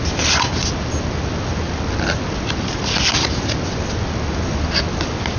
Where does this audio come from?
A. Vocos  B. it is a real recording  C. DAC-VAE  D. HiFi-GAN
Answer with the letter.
B